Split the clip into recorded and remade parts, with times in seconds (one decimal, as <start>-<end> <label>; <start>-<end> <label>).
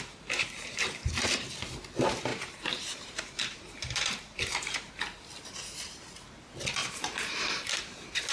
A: 0.0-2.3 recorded; 2.3-4.9 remade; 4.9-6.8 recorded; 6.8-7.7 remade; 7.7-8.3 recorded